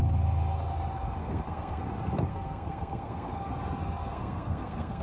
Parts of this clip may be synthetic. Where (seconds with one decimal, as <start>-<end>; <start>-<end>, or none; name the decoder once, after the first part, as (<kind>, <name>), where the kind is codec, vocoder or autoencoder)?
1.2-1.8 (codec, SNAC); 2.3-3.5; 4.0-5.0